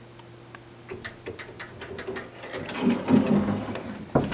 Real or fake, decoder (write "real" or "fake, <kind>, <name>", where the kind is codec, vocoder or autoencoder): real